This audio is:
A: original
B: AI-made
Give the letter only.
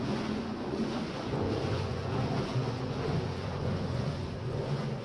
B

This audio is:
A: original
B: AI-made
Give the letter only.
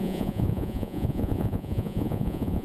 B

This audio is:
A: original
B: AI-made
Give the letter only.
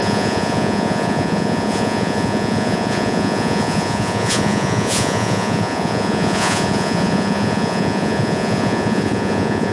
B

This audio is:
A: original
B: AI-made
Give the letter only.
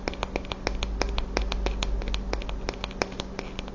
A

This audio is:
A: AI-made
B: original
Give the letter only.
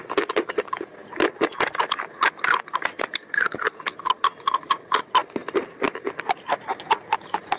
B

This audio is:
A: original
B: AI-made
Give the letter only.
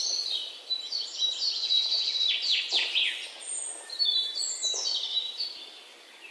A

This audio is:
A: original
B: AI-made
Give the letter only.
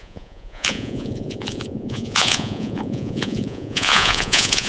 B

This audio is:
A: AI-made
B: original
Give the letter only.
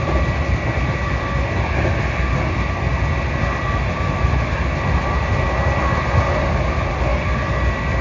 B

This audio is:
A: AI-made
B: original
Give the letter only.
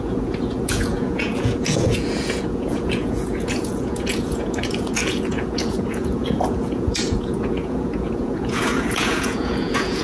A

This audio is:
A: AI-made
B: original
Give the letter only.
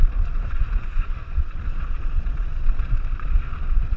A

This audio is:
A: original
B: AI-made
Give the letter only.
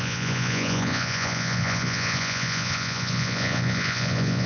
B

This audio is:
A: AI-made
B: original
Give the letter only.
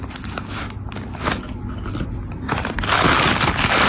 B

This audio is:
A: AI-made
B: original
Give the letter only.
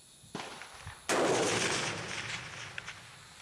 B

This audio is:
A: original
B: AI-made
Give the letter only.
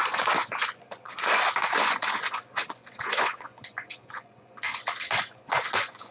B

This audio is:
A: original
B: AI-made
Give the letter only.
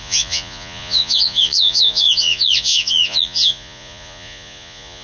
B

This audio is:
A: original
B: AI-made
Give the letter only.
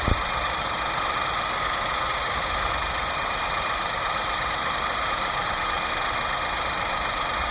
A